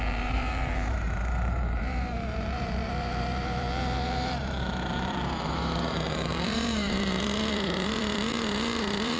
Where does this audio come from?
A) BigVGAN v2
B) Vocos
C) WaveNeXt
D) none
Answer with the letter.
A